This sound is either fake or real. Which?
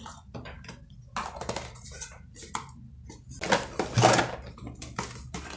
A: real